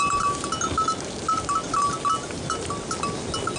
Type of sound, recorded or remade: recorded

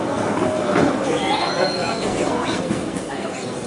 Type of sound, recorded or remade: remade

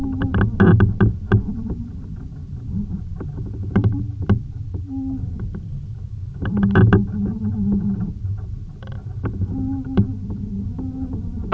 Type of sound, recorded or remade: recorded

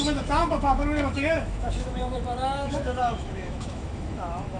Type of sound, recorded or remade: remade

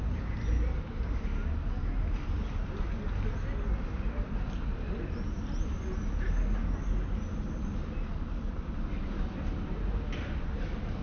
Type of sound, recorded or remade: recorded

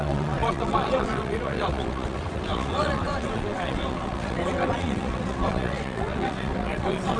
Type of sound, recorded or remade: remade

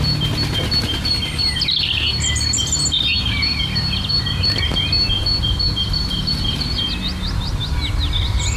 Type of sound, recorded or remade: recorded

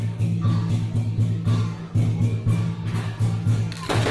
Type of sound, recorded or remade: remade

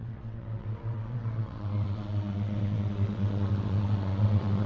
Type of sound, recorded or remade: remade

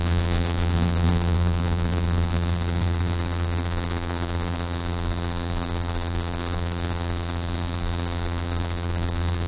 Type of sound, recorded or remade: remade